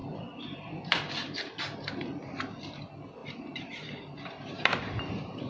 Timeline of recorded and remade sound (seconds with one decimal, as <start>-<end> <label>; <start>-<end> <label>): 0.0-2.8 remade; 2.8-3.2 recorded; 3.2-5.5 remade